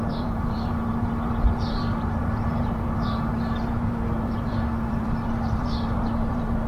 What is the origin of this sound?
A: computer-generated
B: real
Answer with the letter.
A